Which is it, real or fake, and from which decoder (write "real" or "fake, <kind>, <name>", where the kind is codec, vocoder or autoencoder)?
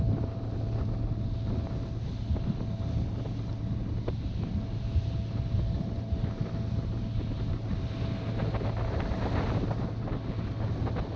real